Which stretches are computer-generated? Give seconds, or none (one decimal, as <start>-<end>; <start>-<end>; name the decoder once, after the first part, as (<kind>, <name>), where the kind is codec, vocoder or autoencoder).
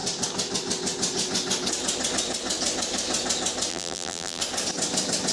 3.7-4.4 (vocoder, BigVGAN v2)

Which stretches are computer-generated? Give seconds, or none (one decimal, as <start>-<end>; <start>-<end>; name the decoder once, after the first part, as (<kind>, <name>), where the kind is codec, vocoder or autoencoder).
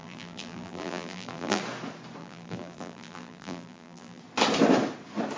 0.0-1.6 (vocoder, BigVGAN v2); 2.2-4.2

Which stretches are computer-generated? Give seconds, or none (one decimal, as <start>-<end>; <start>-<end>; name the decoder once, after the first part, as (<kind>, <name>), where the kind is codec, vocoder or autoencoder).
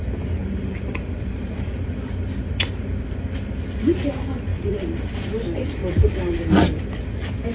0.4-1.7 (vocoder, BigVGAN v2); 4.5-5.1; 5.8-6.4